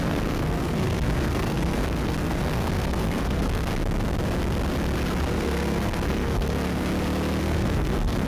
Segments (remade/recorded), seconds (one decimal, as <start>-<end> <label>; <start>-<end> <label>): 0.0-3.7 remade; 3.7-5.2 recorded; 5.2-6.9 remade; 6.9-7.4 recorded; 7.4-8.3 remade